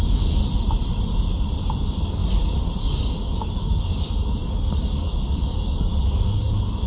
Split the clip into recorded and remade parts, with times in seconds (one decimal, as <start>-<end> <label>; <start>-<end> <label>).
0.0-0.4 remade; 0.4-1.6 recorded; 1.6-2.2 remade; 2.2-2.8 recorded; 2.8-6.9 remade

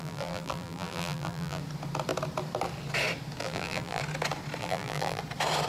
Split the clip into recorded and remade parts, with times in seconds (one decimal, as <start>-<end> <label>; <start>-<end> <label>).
0.0-1.6 remade; 1.6-3.4 recorded; 3.4-4.0 remade; 4.0-4.6 recorded; 4.6-5.2 remade; 5.2-5.7 recorded